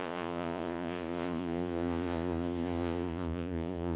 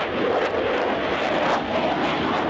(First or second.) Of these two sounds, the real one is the second